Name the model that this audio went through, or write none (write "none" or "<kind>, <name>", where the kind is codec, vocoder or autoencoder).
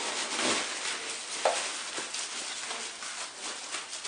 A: none